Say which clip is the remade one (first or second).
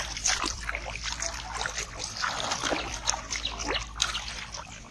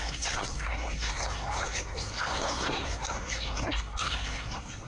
second